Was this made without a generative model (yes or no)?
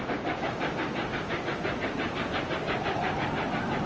yes